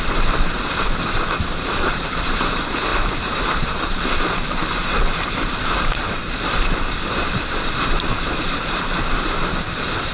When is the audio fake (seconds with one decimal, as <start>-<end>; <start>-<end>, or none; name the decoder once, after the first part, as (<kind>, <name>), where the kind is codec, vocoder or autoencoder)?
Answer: 0.0-6.2 (vocoder, BigVGAN v2); 7.1-10.1